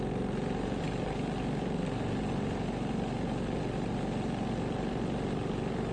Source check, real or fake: real